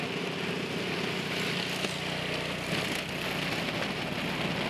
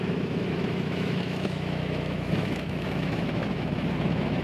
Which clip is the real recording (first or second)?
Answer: first